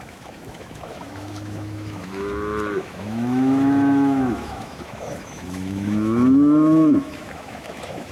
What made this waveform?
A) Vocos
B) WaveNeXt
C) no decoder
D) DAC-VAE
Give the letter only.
D